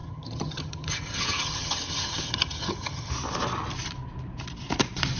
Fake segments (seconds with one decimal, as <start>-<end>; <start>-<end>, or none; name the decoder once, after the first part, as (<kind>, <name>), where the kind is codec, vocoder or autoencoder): 0.0-3.1 (vocoder, HiFi-GAN)